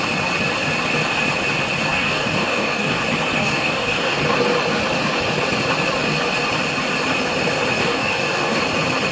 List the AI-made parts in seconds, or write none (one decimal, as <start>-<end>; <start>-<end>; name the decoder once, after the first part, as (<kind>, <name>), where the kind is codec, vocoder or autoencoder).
1.9-3.0 (codec, DAC); 3.4-4.2; 7.8-8.6